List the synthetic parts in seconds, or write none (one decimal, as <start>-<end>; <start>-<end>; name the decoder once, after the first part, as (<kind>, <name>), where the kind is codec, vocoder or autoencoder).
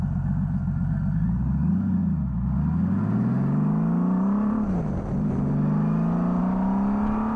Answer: none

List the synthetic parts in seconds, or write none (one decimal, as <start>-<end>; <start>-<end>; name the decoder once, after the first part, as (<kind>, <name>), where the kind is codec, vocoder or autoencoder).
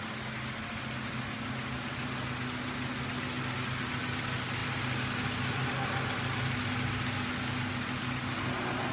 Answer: none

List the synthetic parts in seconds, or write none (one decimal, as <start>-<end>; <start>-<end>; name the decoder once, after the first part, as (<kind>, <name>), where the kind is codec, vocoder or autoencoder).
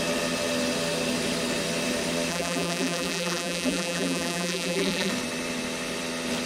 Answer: 2.3-5.1 (vocoder, BigVGAN v2)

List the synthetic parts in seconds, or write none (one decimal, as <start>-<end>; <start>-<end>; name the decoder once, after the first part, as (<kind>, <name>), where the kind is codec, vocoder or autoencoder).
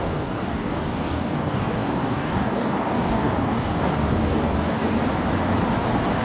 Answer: 0.0-4.9 (codec, DAC)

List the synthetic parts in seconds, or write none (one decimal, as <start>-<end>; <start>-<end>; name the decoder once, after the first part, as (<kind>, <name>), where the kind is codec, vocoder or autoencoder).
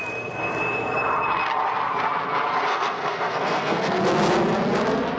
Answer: 2.7-4.0 (codec, SNAC)